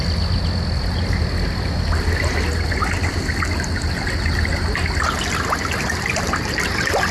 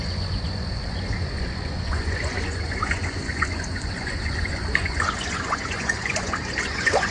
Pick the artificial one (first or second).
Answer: second